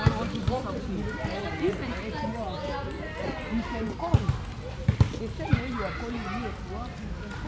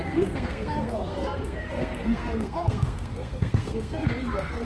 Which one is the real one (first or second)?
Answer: first